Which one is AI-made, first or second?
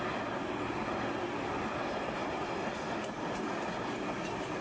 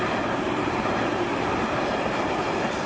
second